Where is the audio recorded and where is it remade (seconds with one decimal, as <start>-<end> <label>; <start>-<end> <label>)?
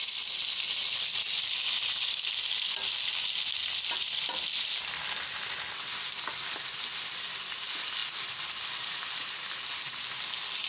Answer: 0.0-10.7 recorded